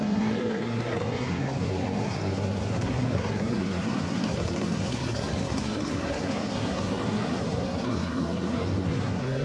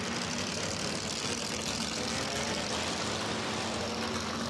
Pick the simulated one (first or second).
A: first